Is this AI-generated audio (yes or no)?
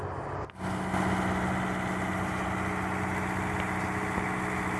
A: no